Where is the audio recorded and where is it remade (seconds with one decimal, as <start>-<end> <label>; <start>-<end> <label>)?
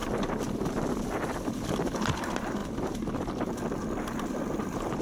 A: 0.0-1.0 recorded; 1.0-2.6 remade; 2.6-3.5 recorded; 3.5-5.0 remade